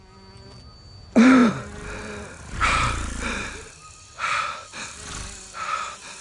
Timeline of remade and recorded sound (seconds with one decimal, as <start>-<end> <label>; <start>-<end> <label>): 0.0-6.2 recorded